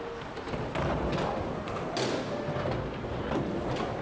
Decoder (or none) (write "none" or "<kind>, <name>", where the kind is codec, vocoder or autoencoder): none